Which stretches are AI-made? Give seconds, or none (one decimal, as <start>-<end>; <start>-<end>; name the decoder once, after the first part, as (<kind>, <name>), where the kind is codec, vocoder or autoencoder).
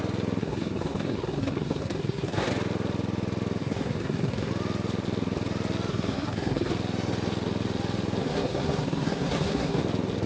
0.4-2.5 (codec, SNAC); 3.6-4.5; 5.9-6.7; 8.2-9.8